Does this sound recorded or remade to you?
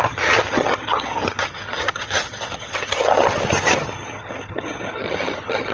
remade